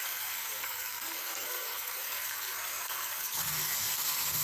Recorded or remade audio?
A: remade